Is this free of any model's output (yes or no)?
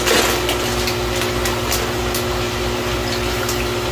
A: yes